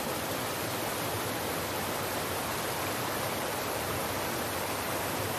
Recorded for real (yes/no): yes